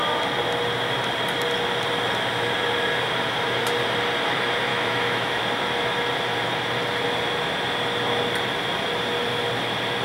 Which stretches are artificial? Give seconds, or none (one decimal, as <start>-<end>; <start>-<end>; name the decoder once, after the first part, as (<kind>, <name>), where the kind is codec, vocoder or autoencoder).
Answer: 4.7-5.4 (autoencoder, DAC-VAE)